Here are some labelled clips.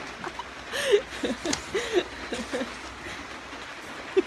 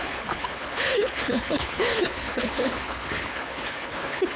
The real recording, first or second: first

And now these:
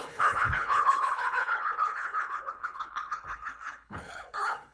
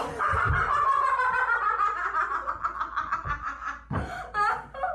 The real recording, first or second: second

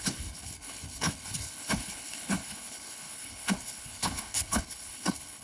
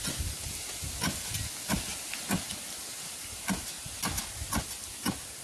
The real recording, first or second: second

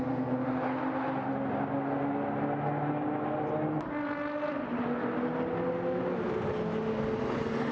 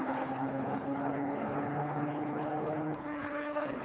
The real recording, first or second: first